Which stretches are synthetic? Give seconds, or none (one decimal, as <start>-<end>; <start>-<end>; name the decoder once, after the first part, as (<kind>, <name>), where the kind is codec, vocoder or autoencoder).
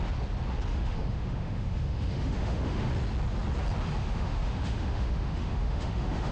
0.7-2.9 (autoencoder, DAC-VAE); 4.0-6.3